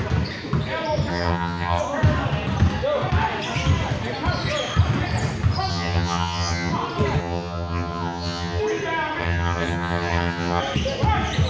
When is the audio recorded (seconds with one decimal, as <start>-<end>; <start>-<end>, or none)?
0.0-1.1; 1.8-5.7; 6.7-7.2; 8.6-9.2; 10.6-11.5